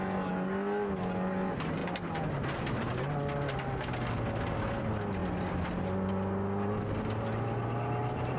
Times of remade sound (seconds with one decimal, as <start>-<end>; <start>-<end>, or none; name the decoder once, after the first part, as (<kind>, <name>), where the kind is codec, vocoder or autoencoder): none